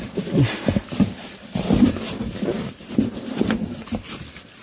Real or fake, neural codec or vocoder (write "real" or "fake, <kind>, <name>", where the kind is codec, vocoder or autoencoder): fake, vocoder, BigVGAN v2